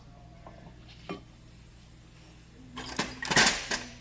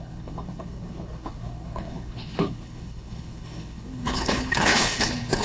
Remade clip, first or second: second